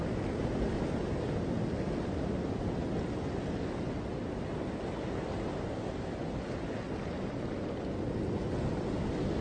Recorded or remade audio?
recorded